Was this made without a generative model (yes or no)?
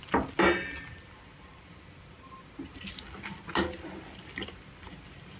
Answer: yes